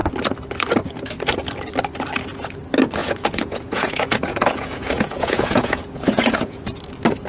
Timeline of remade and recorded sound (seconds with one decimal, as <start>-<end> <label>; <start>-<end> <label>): 0.0-3.0 recorded; 3.0-6.6 remade; 6.6-7.3 recorded